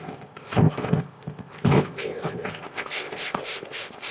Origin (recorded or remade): remade